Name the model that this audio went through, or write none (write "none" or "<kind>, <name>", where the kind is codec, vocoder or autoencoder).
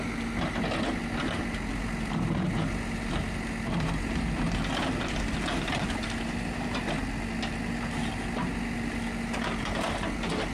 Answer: none